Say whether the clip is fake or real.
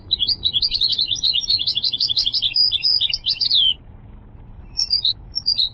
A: fake